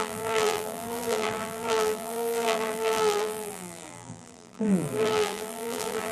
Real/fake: fake